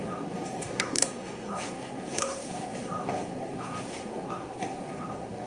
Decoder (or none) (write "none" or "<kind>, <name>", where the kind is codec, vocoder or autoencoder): codec, SNAC